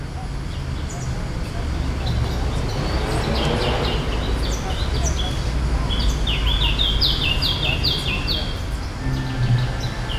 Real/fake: real